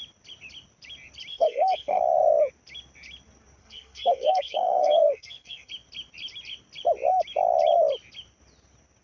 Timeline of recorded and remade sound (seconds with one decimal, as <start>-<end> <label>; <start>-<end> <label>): 0.0-1.3 recorded; 1.3-2.0 remade; 2.0-3.6 recorded; 3.6-5.7 remade; 5.7-9.0 recorded